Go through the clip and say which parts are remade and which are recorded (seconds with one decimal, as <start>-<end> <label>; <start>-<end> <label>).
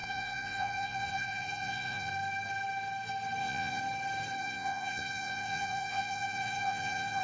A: 0.0-2.1 remade; 2.1-3.4 recorded; 3.4-3.8 remade; 3.8-4.4 recorded; 4.4-7.2 remade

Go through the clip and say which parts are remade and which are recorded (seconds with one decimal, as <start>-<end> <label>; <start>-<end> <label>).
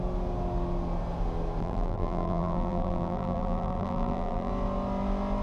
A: 0.0-1.6 recorded; 1.6-4.5 remade; 4.5-5.4 recorded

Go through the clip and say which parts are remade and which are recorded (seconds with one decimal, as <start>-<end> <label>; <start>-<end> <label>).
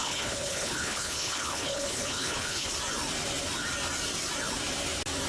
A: 0.0-2.7 remade; 2.7-5.3 recorded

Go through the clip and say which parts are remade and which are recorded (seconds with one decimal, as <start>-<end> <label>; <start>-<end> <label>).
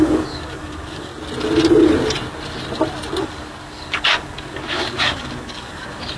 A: 0.0-1.1 remade; 1.1-3.2 recorded; 3.2-6.2 remade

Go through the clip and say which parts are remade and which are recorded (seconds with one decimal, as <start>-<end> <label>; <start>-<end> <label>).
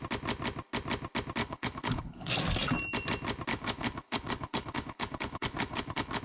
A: 0.0-1.4 recorded; 1.4-2.3 remade; 2.3-3.5 recorded; 3.5-6.2 remade